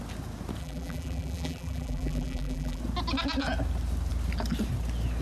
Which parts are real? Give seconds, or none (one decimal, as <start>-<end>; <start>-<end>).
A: 0.0-0.6; 2.8-5.2